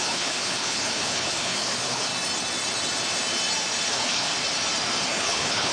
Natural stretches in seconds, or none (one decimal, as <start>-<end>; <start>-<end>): 2.1-3.9; 4.3-5.1